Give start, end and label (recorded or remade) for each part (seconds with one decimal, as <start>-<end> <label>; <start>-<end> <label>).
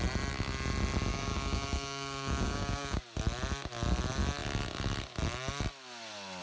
0.0-1.1 recorded; 1.1-3.0 remade; 3.0-6.4 recorded